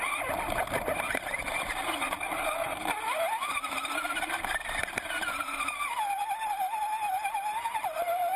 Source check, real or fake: fake